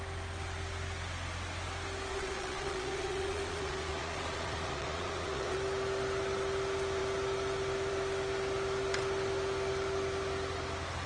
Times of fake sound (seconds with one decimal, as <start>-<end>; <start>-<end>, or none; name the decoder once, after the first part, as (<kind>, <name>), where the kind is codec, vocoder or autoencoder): 2.1-5.6 (vocoder, Vocos)